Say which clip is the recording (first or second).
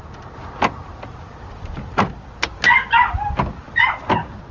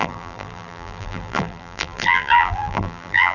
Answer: first